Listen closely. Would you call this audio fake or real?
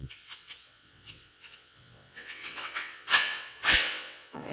fake